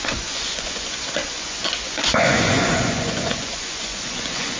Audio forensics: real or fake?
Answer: fake